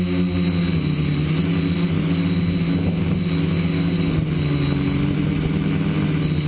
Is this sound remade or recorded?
recorded